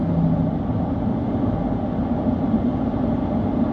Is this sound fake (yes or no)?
no